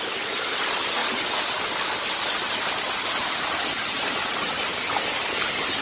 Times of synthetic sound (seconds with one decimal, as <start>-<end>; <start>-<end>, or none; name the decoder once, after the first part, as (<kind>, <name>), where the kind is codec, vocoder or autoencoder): none